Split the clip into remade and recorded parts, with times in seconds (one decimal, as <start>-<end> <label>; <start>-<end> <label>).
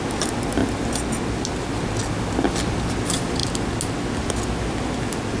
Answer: 0.0-5.4 recorded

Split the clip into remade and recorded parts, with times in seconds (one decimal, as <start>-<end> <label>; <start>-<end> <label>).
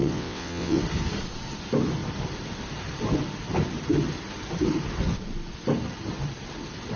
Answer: 0.0-0.8 remade; 0.8-7.0 recorded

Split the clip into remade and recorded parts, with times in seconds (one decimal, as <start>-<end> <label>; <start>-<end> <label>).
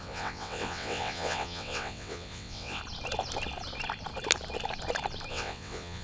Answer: 0.0-2.8 remade; 2.8-5.3 recorded; 5.3-6.0 remade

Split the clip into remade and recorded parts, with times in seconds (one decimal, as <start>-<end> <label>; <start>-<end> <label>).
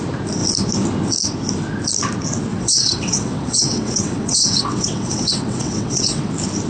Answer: 0.0-2.5 recorded; 2.5-6.3 remade; 6.3-6.7 recorded